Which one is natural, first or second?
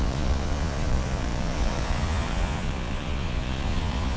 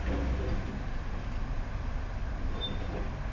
second